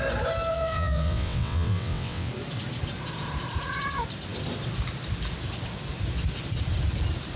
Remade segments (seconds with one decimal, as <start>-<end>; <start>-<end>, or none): 0.5-2.3